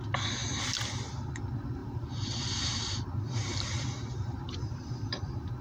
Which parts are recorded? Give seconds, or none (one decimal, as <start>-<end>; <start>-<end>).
0.0-1.8